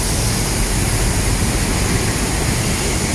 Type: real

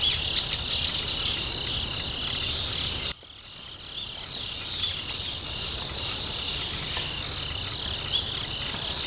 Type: real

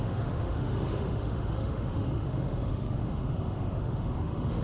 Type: fake